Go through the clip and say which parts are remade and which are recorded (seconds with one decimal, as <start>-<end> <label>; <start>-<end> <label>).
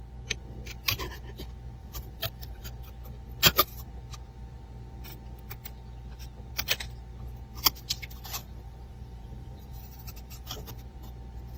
0.0-1.8 recorded; 1.8-2.6 remade; 2.6-8.4 recorded; 8.4-10.7 remade; 10.7-11.6 recorded